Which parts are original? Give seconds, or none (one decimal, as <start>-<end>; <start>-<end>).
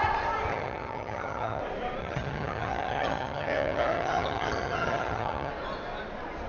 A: 0.0-0.5; 1.6-2.0; 5.5-6.5